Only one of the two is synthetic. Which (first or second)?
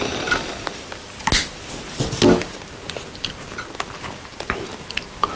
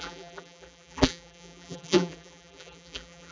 second